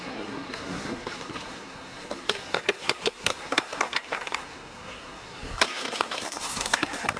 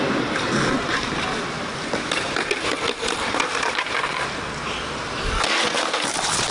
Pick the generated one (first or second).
first